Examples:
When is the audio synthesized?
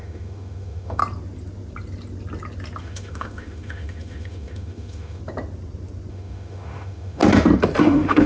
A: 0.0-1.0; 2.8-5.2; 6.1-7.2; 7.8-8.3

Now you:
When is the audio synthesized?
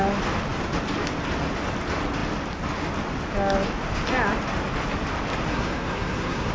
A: 5.5-6.5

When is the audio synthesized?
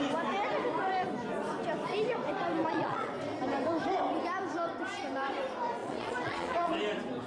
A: 2.6-3.1; 5.8-6.7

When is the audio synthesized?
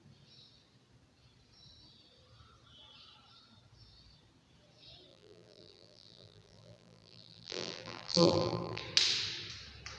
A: 5.1-8.8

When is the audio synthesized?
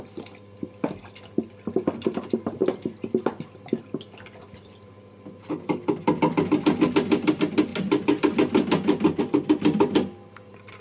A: none